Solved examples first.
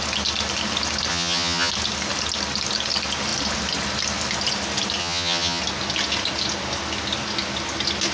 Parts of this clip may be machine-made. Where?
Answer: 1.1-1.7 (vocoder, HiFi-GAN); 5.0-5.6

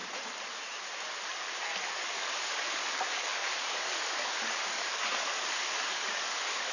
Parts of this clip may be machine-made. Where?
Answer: 1.8-6.7 (codec, DAC)

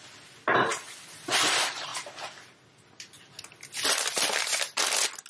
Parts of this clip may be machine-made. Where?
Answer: 0.0-1.9 (vocoder, BigVGAN v2)

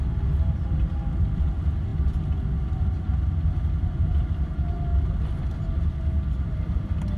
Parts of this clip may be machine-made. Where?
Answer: none